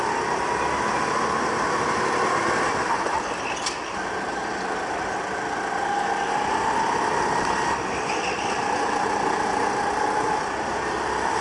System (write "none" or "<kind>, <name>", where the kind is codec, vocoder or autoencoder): none